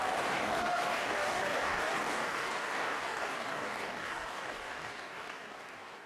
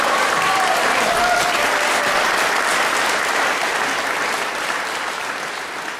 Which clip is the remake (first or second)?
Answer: first